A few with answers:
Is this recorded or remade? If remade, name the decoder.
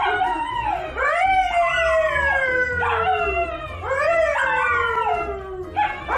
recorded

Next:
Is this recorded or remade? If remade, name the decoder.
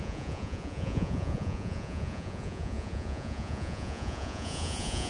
remade, vocoder, Vocos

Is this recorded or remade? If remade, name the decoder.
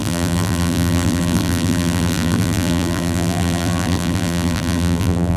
remade, vocoder, BigVGAN v2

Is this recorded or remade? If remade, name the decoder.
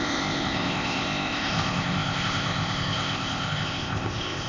remade, codec, ZipCodec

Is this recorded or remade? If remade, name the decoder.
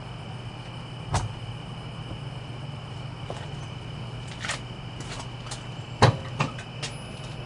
recorded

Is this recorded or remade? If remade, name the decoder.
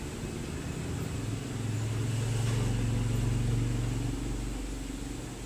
recorded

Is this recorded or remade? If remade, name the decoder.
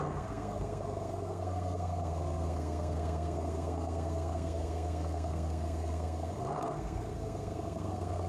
remade, codec, SNAC